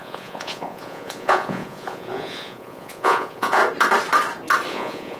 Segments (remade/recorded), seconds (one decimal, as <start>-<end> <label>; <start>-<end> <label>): 0.0-3.6 remade; 3.6-4.7 recorded; 4.7-5.2 remade